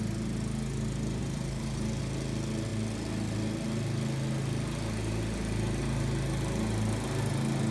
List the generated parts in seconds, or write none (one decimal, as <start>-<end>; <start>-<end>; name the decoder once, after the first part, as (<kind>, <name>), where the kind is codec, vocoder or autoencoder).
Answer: 1.2-2.0 (vocoder, BigVGAN v2)